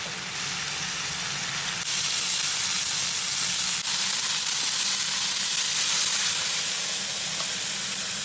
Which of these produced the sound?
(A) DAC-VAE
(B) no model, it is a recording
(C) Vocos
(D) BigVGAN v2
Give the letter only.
B